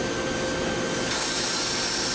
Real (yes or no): yes